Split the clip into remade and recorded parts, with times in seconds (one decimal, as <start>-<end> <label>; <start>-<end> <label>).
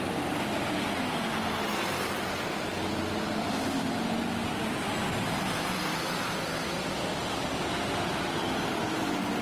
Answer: 0.0-9.4 recorded